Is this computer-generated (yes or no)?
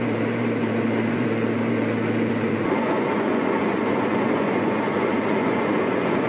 yes